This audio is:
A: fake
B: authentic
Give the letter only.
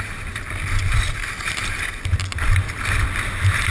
B